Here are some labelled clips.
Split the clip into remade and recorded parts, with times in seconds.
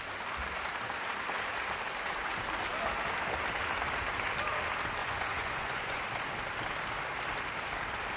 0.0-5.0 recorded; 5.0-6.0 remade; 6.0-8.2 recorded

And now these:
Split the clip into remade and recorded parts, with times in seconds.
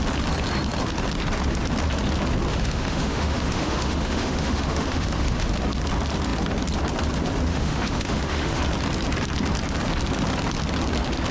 0.0-2.5 recorded; 2.5-5.5 remade; 5.5-7.5 recorded; 7.5-8.6 remade; 8.6-11.3 recorded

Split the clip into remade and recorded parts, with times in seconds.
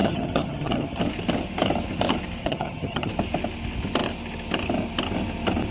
0.0-1.0 remade; 1.0-2.4 recorded; 2.4-3.1 remade; 3.1-5.7 recorded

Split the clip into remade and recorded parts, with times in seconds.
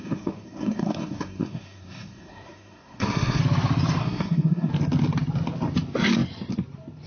0.0-3.4 remade; 3.4-4.0 recorded; 4.0-4.7 remade; 4.7-7.1 recorded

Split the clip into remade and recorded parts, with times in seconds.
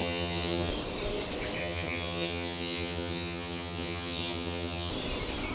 0.0-0.7 remade; 0.7-1.6 recorded; 1.6-4.9 remade; 4.9-5.5 recorded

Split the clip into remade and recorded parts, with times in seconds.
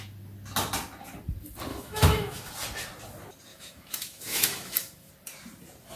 0.0-1.7 recorded; 1.7-2.5 remade; 2.5-3.5 recorded; 3.5-5.1 remade; 5.1-6.0 recorded